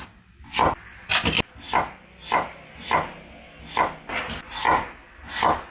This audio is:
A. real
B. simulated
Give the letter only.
A